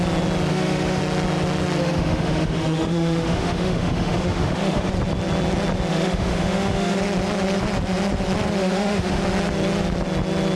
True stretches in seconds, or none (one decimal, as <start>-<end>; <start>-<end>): 0.0-0.5; 1.0-1.8; 4.9-5.9; 7.0-8.6; 9.2-10.6